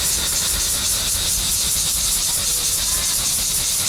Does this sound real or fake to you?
fake